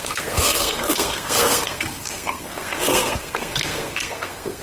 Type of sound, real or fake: fake